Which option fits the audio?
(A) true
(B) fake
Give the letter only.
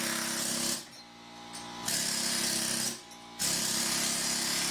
A